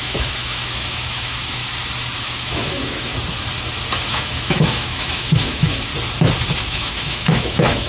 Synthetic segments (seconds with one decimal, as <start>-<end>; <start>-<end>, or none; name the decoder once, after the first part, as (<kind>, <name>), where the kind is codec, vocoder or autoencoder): 0.0-1.6 (autoencoder, DAC-VAE); 2.2-3.1; 4.1-5.9; 6.6-7.9